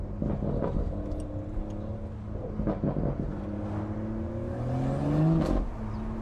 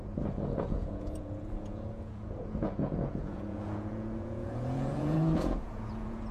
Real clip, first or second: first